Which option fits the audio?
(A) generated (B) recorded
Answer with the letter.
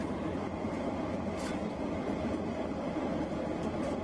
B